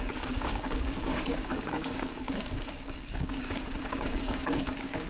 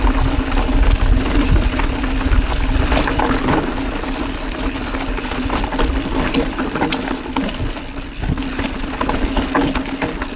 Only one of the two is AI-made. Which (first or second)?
first